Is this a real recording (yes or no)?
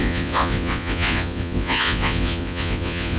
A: no